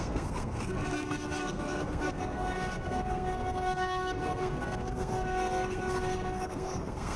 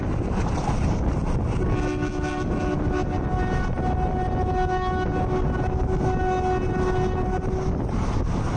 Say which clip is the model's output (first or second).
first